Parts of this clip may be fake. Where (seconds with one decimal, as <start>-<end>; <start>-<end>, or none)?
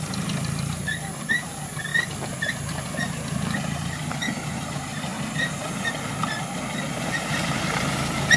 0.0-1.9; 3.0-5.1; 7.0-8.4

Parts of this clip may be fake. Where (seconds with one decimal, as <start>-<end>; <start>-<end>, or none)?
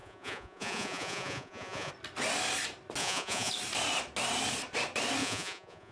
0.0-1.9; 3.0-3.5; 5.2-5.9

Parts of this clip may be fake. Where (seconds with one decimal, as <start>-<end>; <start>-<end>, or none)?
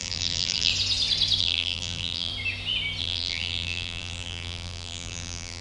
0.0-0.7; 1.4-2.3; 3.0-5.6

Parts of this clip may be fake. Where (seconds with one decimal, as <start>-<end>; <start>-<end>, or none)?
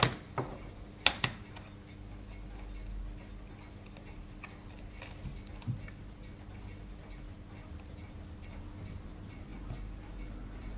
none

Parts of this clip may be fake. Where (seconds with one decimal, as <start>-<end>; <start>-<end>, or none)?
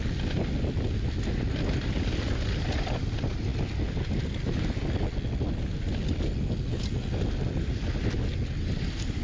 none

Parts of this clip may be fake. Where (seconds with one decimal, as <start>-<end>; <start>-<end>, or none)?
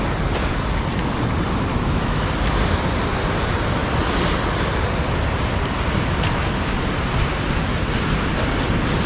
1.7-2.3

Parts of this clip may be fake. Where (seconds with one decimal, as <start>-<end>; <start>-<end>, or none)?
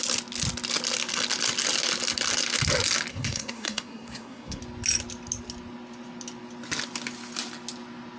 3.1-4.6